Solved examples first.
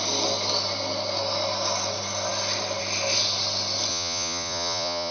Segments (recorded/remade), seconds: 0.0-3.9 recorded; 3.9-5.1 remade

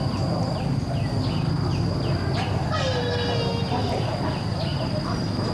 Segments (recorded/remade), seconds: 0.0-4.7 recorded; 4.7-5.5 remade

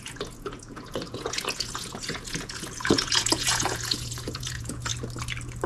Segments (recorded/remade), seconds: 0.0-4.9 remade; 4.9-5.7 recorded

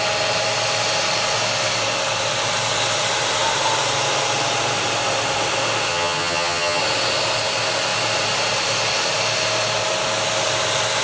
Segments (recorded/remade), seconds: 0.0-5.9 recorded; 5.9-6.8 remade; 6.8-11.0 recorded